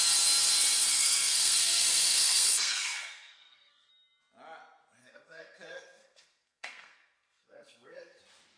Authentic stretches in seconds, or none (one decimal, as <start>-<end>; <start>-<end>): 0.0-0.9; 3.9-5.0; 8.2-8.6